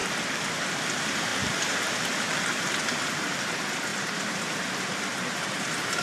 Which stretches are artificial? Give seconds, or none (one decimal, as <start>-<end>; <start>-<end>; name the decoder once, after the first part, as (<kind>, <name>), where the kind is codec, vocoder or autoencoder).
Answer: 3.9-4.7 (vocoder, BigVGAN v2)